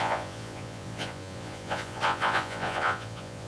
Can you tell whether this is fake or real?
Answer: fake